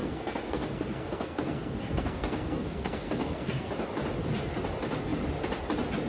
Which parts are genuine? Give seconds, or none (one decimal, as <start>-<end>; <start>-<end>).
3.7-6.1